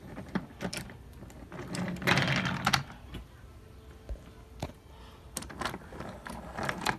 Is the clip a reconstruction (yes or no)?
no